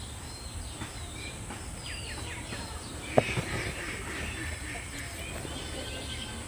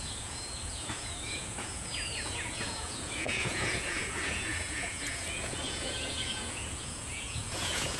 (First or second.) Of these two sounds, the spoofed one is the second